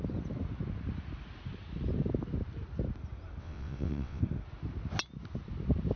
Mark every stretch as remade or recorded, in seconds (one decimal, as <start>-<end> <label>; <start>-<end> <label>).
0.0-3.4 recorded; 3.4-4.2 remade; 4.2-6.0 recorded